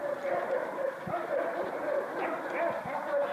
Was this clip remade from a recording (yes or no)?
no